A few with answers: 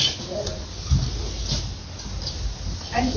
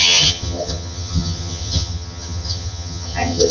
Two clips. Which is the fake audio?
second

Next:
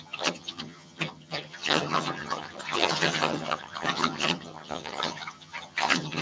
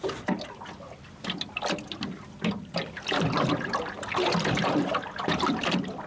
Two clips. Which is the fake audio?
first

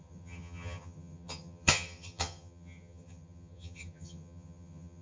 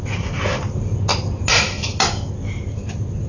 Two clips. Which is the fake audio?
first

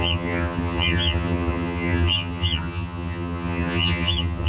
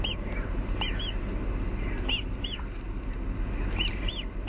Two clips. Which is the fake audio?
first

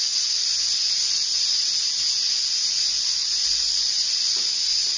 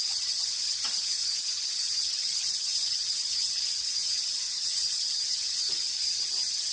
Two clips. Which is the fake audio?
second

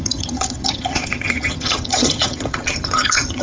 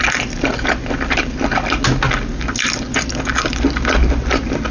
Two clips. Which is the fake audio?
first